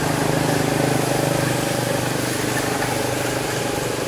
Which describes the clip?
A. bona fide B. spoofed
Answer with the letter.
A